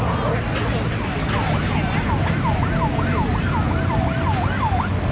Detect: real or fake real